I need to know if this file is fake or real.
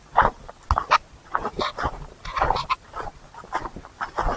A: real